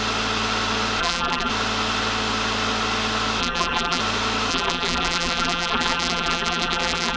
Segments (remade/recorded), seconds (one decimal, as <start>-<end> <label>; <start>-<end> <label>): 0.0-1.0 recorded; 1.0-1.5 remade; 1.5-3.4 recorded; 3.4-4.0 remade; 4.0-4.5 recorded; 4.5-7.2 remade